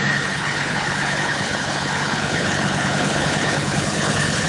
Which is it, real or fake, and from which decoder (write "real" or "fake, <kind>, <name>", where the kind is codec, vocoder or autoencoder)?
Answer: fake, codec, HILCodec